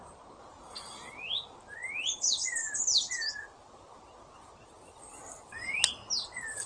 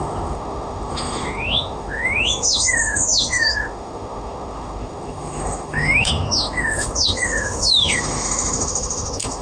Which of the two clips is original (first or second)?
first